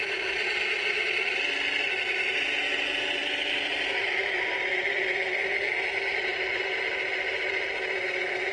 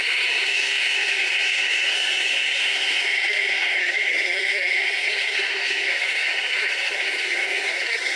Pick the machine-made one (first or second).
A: second